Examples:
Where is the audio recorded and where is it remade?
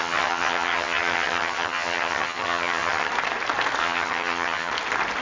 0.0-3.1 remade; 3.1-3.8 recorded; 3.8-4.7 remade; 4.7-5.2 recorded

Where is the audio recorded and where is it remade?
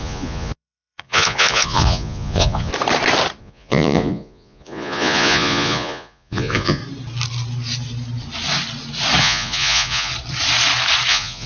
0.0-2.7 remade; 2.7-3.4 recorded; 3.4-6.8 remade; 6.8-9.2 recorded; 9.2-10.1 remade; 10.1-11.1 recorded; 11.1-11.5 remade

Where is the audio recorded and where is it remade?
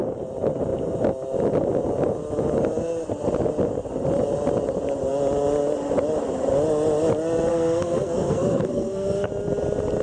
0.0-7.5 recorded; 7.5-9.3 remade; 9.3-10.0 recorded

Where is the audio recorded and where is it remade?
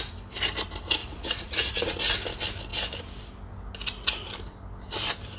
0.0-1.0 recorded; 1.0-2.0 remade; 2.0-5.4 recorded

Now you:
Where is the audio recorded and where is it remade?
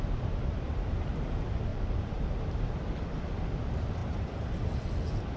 0.0-1.7 recorded; 1.7-2.6 remade; 2.6-4.0 recorded; 4.0-4.7 remade; 4.7-5.4 recorded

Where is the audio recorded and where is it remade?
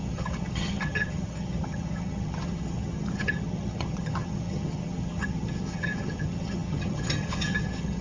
0.0-8.0 remade